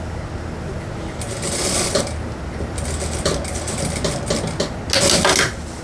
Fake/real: real